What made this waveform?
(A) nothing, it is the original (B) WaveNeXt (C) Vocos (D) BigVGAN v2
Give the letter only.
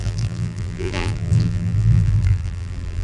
D